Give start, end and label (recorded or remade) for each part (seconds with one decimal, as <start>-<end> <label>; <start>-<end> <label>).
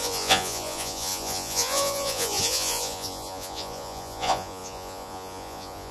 0.0-5.9 remade